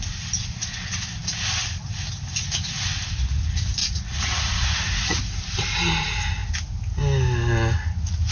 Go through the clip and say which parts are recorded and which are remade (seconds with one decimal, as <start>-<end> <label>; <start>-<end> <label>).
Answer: 0.0-3.8 recorded; 3.8-5.2 remade; 5.2-8.3 recorded